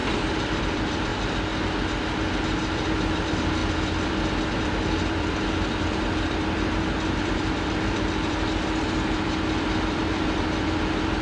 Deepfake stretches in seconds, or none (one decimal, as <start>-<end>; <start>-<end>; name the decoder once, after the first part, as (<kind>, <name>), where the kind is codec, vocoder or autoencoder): 0.0-1.1 (vocoder, BigVGAN v2); 3.0-11.2